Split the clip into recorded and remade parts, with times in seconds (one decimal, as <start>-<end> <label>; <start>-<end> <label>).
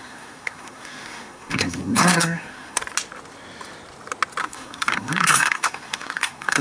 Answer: 0.0-2.8 remade; 2.8-4.4 recorded; 4.4-6.6 remade